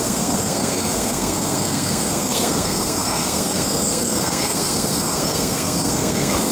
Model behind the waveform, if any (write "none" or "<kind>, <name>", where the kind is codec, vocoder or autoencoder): codec, SNAC